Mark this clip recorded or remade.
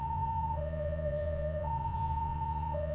remade